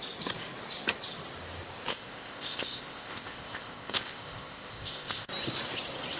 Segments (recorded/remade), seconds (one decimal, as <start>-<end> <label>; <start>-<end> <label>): 0.0-1.9 recorded; 1.9-5.3 remade; 5.3-6.2 recorded